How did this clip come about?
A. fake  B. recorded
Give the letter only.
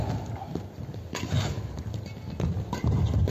B